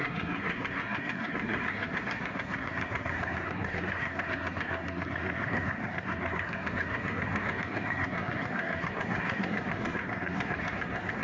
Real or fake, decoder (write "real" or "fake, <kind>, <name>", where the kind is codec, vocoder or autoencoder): fake, codec, SNAC